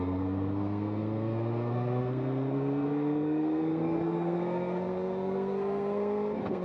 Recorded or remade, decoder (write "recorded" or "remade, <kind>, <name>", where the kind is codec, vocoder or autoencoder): remade, codec, SNAC